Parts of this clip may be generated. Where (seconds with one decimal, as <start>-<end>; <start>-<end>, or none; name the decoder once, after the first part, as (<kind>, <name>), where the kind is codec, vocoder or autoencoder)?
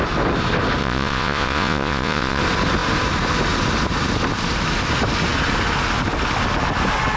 0.8-2.4 (vocoder, Vocos)